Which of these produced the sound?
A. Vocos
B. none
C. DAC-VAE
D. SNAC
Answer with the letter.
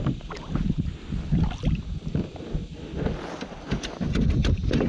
B